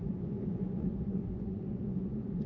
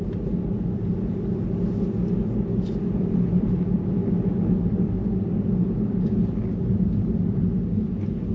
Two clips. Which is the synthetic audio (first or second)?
first